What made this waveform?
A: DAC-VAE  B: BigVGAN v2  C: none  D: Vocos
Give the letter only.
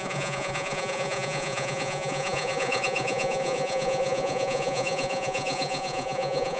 D